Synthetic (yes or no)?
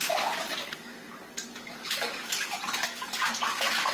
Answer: yes